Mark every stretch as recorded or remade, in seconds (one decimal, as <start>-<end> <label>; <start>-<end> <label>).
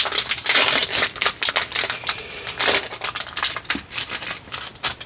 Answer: 0.0-5.1 recorded